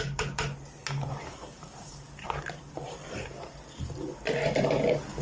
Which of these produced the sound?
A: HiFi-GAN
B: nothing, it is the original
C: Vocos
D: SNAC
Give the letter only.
B